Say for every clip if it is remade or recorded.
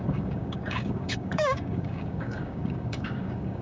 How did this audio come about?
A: remade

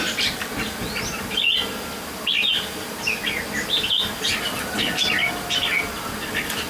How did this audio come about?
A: recorded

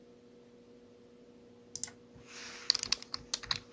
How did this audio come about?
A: recorded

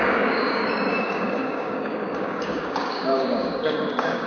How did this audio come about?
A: remade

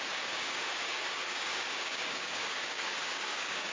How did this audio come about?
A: remade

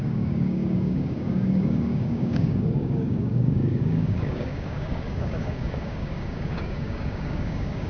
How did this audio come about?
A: remade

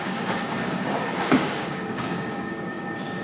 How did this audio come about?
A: remade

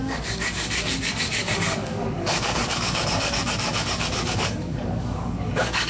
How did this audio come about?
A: remade